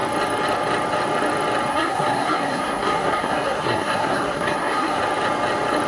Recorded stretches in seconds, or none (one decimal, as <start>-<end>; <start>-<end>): 0.0-1.7; 5.0-5.9